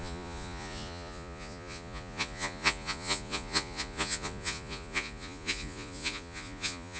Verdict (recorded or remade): remade